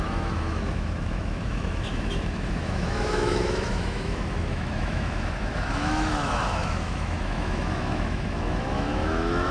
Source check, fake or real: fake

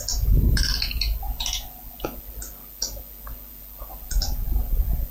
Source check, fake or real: real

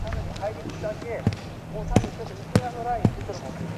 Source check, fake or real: real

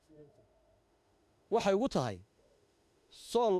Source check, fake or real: fake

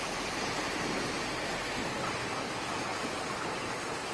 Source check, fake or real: real